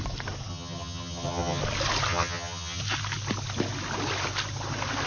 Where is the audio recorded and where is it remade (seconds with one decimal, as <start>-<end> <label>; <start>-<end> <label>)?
0.0-0.5 recorded; 0.5-1.6 remade; 1.6-2.1 recorded; 2.1-2.8 remade; 2.8-5.1 recorded